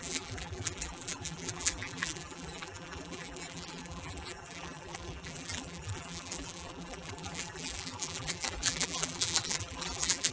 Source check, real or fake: fake